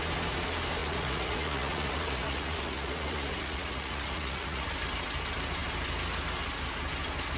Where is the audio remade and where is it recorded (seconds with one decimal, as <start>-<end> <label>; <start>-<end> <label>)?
0.0-0.8 recorded; 0.8-4.7 remade; 4.7-7.4 recorded